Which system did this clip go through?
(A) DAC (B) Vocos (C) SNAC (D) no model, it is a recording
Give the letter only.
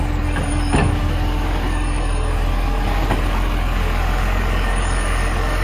A